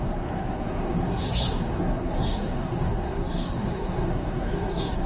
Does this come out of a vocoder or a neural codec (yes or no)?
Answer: yes